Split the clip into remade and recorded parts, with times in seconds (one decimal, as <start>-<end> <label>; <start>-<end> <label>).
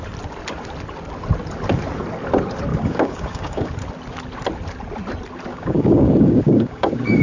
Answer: 0.0-2.7 recorded; 2.7-3.7 remade; 3.7-5.5 recorded; 5.5-7.2 remade